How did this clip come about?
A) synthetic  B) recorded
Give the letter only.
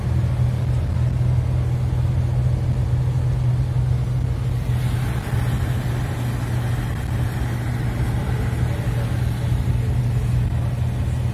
B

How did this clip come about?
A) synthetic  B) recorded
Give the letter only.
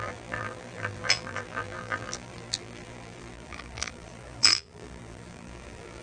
A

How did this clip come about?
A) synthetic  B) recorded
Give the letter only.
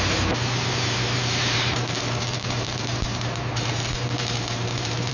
A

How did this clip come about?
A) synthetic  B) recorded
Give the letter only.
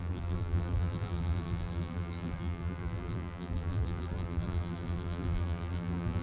A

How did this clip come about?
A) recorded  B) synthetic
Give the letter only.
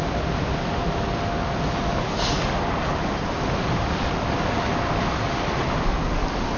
A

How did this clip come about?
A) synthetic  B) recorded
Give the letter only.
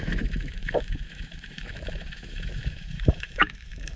A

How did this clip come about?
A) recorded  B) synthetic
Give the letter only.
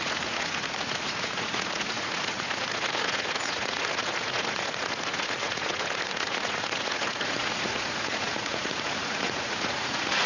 B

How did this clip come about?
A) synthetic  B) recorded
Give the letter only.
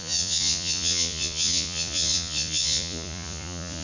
A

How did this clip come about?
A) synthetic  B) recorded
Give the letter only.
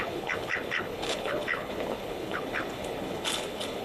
A